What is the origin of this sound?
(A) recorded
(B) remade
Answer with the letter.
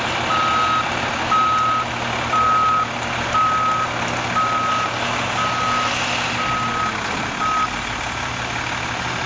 A